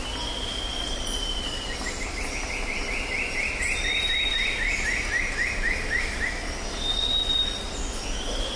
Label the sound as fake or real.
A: real